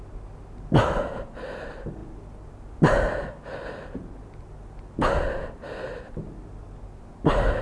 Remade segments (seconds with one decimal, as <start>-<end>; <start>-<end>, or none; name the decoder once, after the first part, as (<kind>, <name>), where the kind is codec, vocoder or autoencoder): none